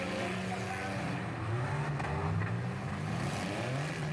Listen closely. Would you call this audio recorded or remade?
recorded